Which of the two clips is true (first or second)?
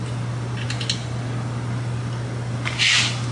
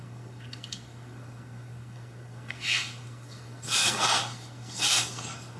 first